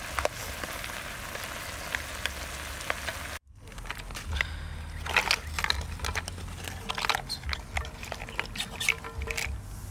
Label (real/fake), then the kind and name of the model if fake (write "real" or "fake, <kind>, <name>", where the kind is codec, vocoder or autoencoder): real